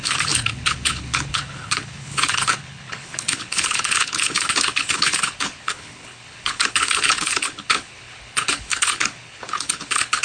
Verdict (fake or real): fake